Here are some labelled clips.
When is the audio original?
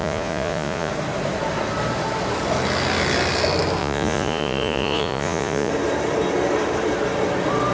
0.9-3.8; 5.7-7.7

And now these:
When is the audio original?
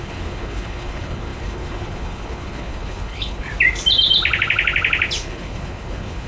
3.5-5.2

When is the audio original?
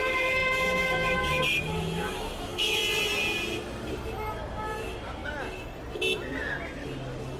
2.8-4.3; 5.2-7.4